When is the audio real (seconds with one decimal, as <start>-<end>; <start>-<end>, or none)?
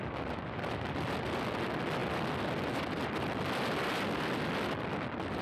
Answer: 0.0-5.4